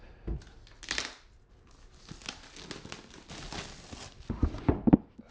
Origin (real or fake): real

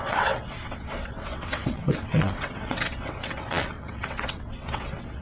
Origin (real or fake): fake